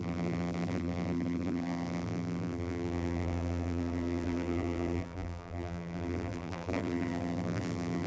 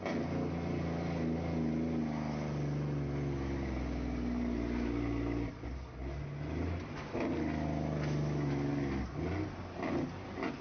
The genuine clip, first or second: second